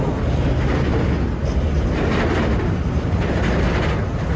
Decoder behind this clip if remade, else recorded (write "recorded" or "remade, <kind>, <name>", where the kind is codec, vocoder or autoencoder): recorded